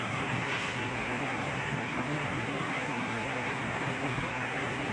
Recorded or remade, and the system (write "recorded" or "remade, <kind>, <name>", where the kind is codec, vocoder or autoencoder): remade, codec, SNAC